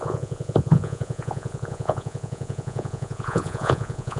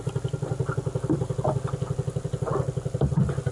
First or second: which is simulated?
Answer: first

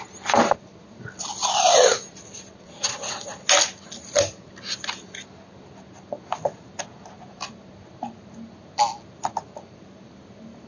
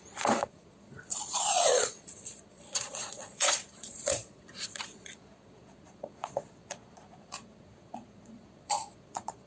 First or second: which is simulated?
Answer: second